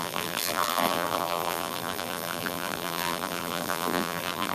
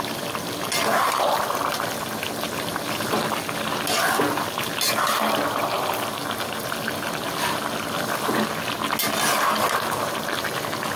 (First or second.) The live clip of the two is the second